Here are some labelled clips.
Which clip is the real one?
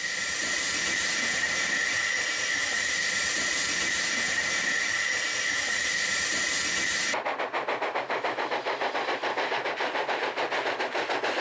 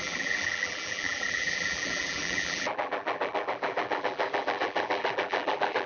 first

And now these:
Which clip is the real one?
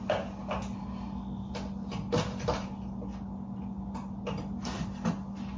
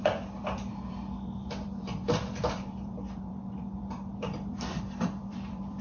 first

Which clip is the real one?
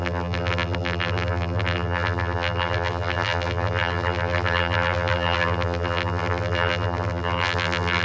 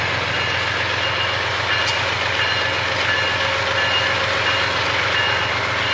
second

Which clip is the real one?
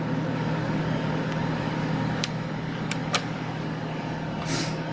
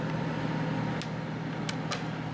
second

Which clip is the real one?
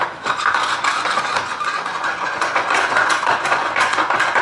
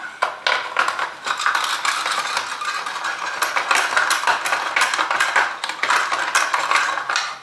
second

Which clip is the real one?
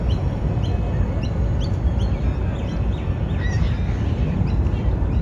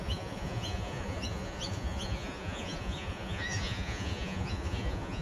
first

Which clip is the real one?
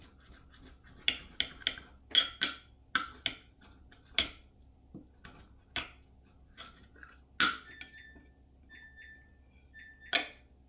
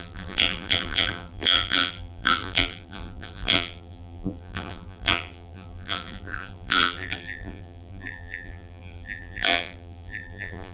first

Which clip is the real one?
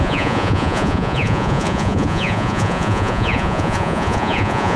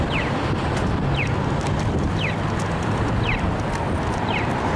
second